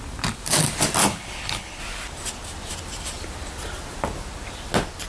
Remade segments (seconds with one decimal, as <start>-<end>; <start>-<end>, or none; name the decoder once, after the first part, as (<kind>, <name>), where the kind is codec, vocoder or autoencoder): 1.0-1.8 (codec, HILCodec)